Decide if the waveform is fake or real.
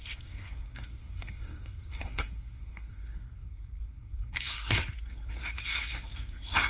fake